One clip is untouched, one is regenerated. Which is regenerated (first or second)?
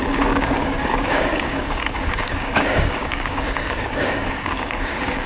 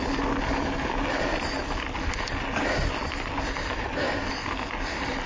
first